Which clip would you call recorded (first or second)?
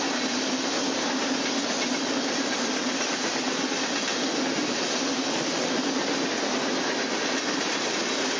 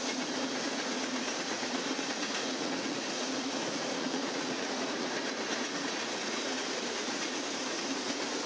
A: first